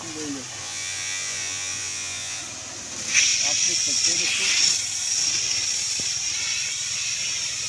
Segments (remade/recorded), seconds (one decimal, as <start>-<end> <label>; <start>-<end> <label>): 0.0-0.6 recorded; 0.6-2.4 remade; 2.4-7.7 recorded